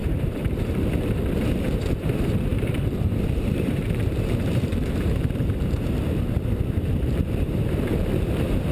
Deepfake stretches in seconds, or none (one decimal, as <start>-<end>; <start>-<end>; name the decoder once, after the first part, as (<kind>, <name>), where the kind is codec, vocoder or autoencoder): 0.0-8.7 (vocoder, BigVGAN v2)

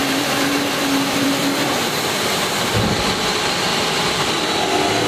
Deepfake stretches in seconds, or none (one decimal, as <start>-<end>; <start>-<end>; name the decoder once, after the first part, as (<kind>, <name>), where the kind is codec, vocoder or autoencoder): 0.0-3.1 (vocoder, BigVGAN v2); 3.7-4.3